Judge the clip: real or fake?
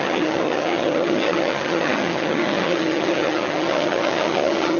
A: fake